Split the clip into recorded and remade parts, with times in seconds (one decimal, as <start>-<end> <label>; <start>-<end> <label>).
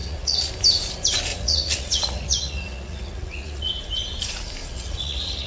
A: 0.0-0.5 remade; 0.5-1.3 recorded; 1.3-3.8 remade; 3.8-4.6 recorded; 4.6-5.5 remade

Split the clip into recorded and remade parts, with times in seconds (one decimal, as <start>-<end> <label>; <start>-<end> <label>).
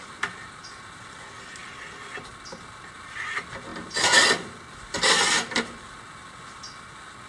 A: 0.0-7.3 recorded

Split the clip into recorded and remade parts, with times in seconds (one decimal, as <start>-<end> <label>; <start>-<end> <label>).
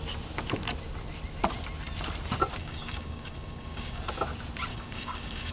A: 0.0-2.6 recorded; 2.6-4.0 remade; 4.0-4.7 recorded; 4.7-5.5 remade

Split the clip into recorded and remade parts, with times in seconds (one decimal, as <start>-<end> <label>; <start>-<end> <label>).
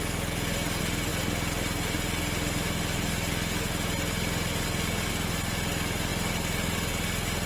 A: 0.0-7.5 recorded